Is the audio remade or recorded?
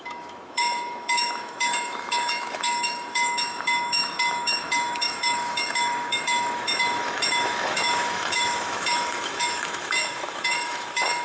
remade